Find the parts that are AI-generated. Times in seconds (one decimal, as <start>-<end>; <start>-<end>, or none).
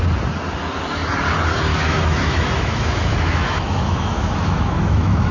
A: 1.7-5.3